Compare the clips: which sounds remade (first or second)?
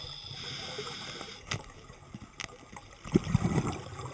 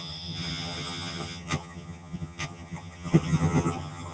second